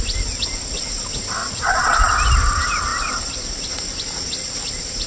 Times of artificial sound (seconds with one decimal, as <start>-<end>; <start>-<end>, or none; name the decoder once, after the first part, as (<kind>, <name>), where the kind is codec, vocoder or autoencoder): 1.4-2.1 (vocoder, Vocos)